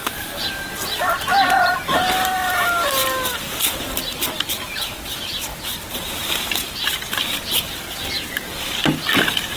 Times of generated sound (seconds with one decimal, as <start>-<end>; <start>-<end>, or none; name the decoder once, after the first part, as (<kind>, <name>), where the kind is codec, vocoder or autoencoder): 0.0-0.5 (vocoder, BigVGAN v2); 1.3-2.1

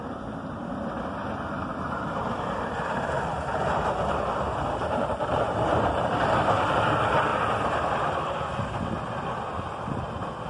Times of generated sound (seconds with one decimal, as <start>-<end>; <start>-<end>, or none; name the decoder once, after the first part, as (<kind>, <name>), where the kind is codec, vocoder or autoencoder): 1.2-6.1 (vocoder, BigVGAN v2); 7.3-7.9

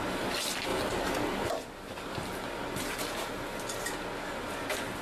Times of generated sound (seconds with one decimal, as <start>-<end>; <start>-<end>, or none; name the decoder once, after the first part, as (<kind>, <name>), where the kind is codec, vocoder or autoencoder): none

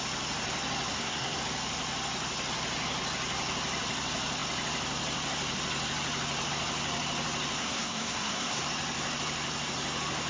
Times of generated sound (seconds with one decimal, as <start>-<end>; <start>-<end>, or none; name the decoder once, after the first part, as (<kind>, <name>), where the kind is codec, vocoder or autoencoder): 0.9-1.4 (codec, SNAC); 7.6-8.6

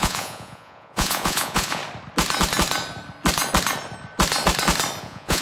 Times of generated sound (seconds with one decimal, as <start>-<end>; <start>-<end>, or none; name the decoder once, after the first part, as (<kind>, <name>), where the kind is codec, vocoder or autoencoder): 0.0-1.8 (vocoder, Vocos); 5.0-5.4

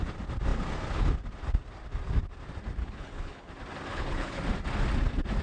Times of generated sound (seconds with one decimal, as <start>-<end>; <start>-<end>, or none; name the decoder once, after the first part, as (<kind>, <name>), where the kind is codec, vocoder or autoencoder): 2.8-3.5 (codec, HILCodec); 3.9-4.4

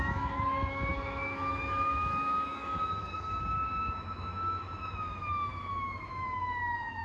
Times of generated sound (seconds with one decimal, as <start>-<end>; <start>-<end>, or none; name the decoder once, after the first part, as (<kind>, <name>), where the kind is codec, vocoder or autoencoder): 0.0-7.0 (autoencoder, DAC-VAE)